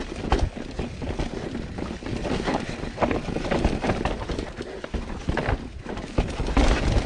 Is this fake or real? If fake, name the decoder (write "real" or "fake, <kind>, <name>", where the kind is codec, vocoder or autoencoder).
real